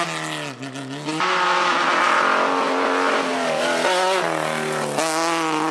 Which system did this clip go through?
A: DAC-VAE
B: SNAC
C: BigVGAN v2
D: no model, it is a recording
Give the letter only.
D